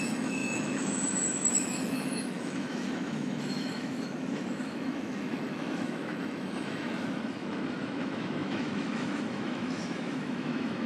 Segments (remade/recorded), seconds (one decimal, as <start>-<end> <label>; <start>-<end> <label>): 0.0-10.9 remade